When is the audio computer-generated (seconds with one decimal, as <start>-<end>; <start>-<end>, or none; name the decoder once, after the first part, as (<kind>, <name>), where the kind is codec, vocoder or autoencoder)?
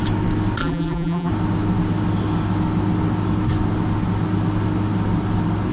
0.6-1.3 (vocoder, BigVGAN v2)